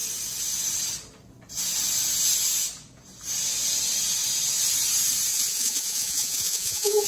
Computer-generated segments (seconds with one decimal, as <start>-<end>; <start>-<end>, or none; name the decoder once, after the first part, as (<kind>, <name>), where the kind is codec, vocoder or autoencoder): 5.3-7.1 (vocoder, Vocos)